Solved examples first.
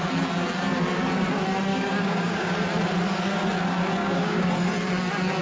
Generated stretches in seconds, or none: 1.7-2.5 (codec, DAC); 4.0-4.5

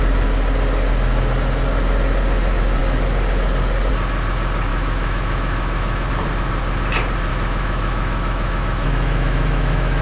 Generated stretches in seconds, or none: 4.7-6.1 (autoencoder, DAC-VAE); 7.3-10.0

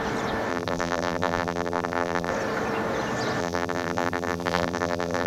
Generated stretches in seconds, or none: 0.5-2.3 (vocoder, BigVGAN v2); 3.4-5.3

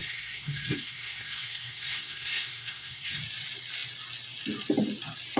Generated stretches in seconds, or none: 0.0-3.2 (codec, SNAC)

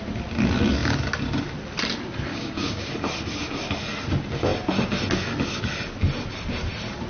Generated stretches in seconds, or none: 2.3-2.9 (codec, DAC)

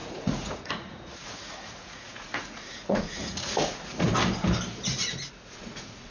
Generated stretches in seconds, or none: 0.0-4.1 (vocoder, Vocos); 5.5-6.1

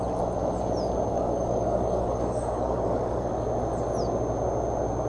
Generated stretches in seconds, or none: 1.1-3.3 (codec, DAC)